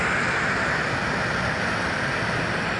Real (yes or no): yes